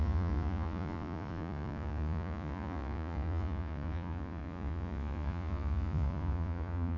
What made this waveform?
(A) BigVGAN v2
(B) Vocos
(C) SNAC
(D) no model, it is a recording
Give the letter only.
B